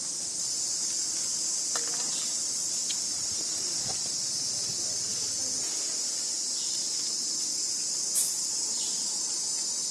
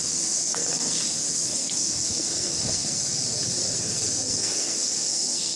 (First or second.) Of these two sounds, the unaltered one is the first